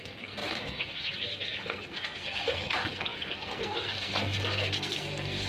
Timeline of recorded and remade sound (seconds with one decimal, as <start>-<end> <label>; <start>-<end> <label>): 0.0-5.5 remade